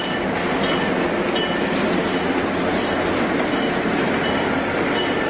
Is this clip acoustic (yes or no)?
yes